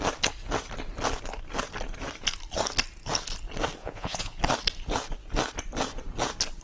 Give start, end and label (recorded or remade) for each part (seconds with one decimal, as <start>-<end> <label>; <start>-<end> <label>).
0.0-3.8 recorded; 3.8-4.4 remade; 4.4-6.6 recorded